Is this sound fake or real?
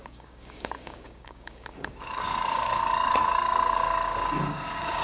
fake